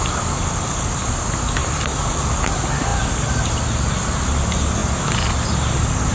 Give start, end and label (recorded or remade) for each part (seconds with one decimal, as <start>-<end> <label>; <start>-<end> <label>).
0.0-1.6 recorded; 1.6-2.3 remade; 2.3-6.1 recorded